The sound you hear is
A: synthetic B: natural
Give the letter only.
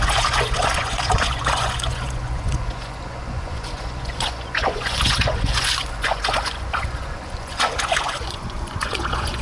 A